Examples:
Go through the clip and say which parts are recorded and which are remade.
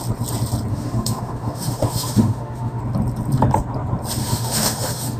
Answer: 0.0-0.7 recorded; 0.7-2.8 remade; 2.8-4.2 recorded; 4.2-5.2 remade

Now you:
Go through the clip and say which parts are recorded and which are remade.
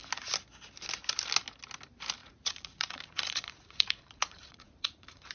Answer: 0.0-2.2 recorded; 2.2-5.3 remade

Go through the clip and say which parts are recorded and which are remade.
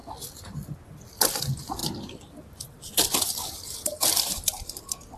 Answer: 0.0-1.8 recorded; 1.8-5.2 remade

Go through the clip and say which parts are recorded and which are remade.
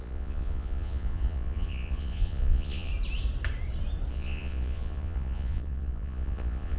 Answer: 0.0-2.9 remade; 2.9-4.1 recorded; 4.1-6.8 remade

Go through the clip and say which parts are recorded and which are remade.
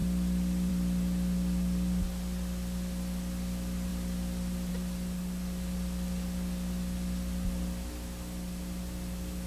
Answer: 0.0-9.5 recorded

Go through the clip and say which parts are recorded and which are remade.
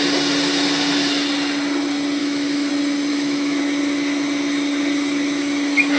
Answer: 0.0-2.2 recorded; 2.2-2.7 remade; 2.7-3.1 recorded; 3.1-3.6 remade; 3.6-6.0 recorded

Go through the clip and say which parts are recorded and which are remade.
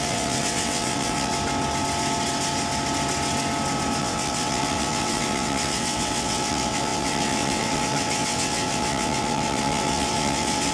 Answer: 0.0-1.3 remade; 1.3-4.0 recorded; 4.0-10.7 remade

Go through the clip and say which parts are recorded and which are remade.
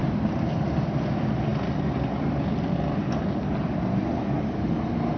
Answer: 0.0-5.2 recorded